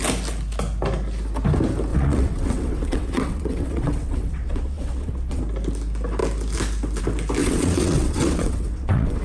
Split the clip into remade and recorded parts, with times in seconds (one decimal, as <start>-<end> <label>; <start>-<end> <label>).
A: 0.0-1.9 recorded; 1.9-5.4 remade; 5.4-7.4 recorded; 7.4-9.2 remade